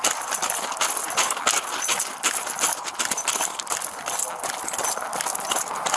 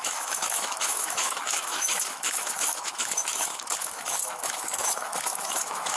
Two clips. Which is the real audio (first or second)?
first